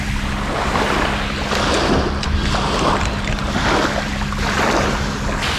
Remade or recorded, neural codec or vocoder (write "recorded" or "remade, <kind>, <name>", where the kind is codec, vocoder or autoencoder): recorded